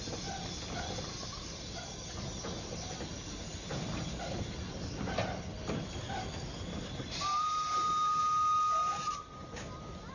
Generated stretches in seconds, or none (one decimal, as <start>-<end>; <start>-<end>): none